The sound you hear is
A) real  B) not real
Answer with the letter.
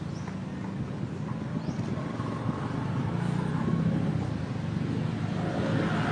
A